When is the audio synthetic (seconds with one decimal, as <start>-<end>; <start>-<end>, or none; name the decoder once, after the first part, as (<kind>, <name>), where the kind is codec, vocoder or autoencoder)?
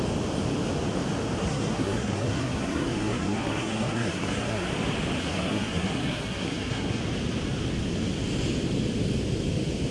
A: 1.4-4.7 (codec, SNAC); 5.2-7.0